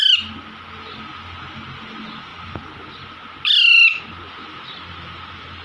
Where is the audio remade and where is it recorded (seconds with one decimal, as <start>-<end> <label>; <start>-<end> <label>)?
0.0-5.6 recorded